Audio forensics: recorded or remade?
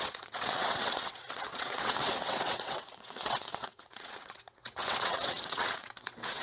remade